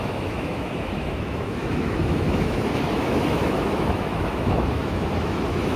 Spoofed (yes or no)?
yes